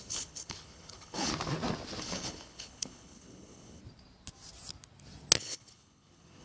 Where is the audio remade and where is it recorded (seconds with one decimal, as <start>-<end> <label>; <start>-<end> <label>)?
0.0-1.3 remade; 1.3-2.0 recorded; 2.0-3.8 remade; 3.8-5.4 recorded; 5.4-6.4 remade